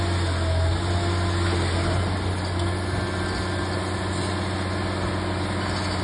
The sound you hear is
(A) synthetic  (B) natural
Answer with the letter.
B